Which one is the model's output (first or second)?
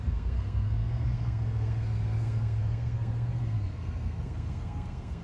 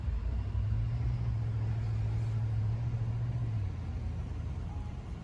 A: first